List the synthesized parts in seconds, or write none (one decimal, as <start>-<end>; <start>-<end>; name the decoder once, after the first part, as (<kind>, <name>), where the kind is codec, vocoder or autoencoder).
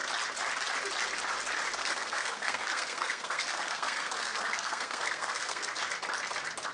1.8-5.8 (codec, SNAC)